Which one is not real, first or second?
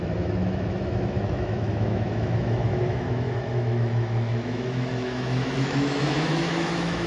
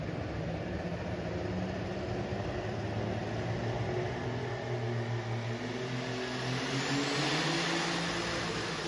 first